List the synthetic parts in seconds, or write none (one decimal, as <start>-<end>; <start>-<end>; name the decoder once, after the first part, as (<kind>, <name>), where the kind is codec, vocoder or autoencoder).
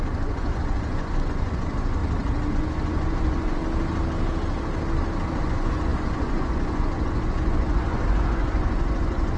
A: 0.0-2.0 (vocoder, Vocos); 2.5-3.6; 5.4-9.4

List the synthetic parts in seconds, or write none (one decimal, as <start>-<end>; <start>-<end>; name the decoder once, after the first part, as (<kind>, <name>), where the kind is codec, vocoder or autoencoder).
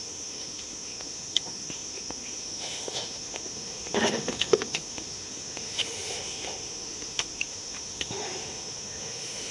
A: 0.0-9.5 (autoencoder, DAC-VAE)